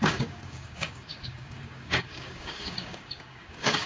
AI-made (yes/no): yes